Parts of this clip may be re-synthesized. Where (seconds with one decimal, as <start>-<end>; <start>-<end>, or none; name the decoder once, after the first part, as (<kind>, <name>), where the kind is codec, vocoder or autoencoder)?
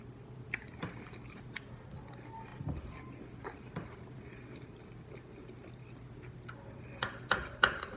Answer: none